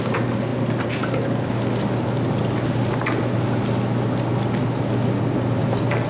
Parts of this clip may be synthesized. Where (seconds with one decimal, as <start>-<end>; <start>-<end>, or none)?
none